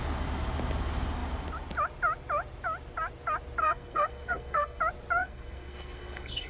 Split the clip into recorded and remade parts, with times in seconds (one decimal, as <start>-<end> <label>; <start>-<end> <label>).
0.0-3.6 recorded; 3.6-4.8 remade; 4.8-5.2 recorded; 5.2-6.5 remade